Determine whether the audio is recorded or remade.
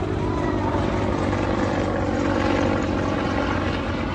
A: recorded